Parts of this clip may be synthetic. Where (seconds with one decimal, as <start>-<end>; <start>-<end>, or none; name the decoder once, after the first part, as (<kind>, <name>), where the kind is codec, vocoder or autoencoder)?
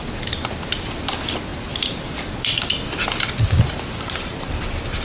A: none